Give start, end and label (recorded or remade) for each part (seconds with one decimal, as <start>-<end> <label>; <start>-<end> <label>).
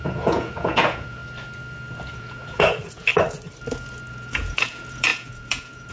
0.0-1.2 remade; 1.2-2.1 recorded; 2.1-3.1 remade; 3.1-4.1 recorded; 4.1-5.9 remade